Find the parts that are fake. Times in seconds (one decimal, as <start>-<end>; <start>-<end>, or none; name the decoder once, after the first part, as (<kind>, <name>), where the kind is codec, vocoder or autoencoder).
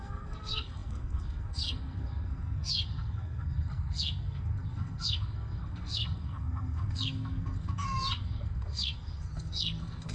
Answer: 0.0-10.1 (codec, SNAC)